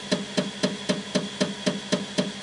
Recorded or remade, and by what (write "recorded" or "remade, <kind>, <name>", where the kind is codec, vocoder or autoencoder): recorded